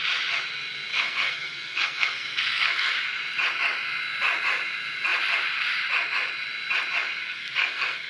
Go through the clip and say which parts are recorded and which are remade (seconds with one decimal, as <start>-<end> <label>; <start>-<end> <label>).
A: 0.0-0.9 recorded; 0.9-2.9 remade; 2.9-7.2 recorded; 7.2-8.1 remade